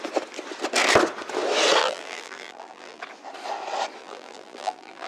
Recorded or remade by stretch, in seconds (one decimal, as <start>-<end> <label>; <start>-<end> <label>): 0.0-1.8 recorded; 1.8-3.0 remade; 3.0-4.0 recorded; 4.0-5.1 remade